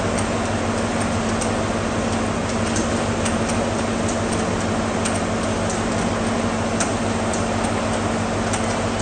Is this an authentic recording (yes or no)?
yes